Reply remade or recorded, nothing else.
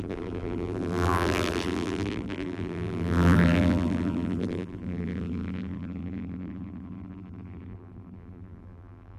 remade